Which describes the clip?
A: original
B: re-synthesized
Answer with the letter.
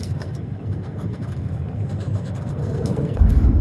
B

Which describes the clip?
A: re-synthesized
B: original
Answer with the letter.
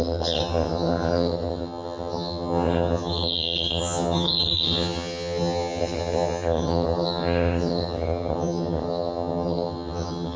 A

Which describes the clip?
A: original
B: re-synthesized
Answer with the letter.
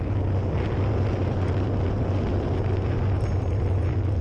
A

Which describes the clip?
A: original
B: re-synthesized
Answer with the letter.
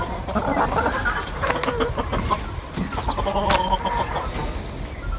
A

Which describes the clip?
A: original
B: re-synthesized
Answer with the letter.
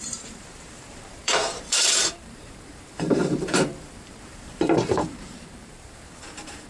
B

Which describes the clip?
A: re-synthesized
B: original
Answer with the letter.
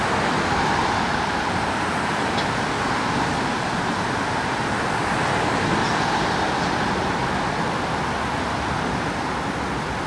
B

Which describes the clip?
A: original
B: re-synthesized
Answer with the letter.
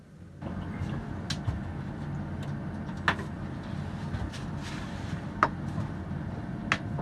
A